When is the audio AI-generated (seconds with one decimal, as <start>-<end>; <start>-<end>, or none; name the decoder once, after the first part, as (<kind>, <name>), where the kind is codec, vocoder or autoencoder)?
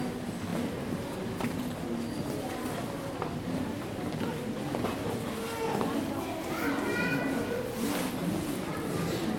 8.2-9.4 (vocoder, BigVGAN v2)